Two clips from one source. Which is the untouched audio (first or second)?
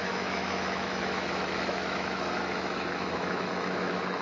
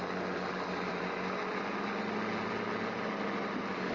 second